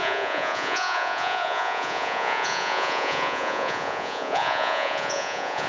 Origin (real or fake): fake